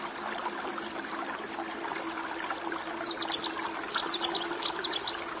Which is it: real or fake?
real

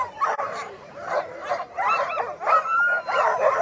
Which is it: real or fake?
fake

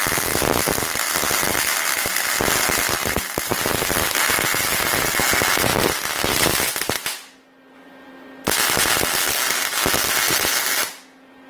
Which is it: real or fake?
real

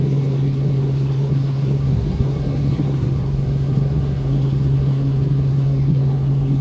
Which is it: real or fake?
fake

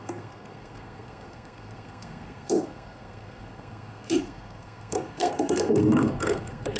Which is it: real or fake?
fake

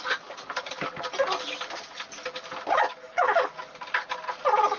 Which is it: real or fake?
real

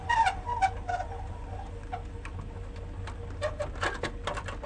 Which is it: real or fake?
real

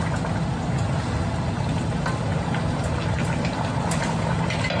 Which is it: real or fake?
real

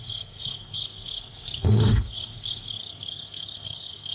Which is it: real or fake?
fake